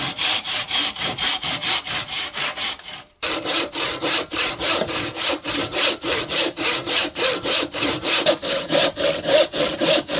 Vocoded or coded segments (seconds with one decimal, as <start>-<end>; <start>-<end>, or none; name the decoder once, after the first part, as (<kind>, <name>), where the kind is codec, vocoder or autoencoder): 0.0-10.2 (vocoder, BigVGAN v2)